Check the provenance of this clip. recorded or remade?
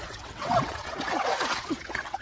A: remade